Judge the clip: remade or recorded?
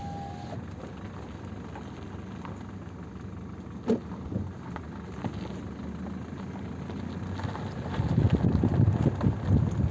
recorded